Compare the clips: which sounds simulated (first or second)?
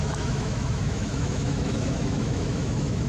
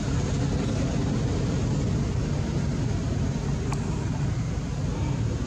first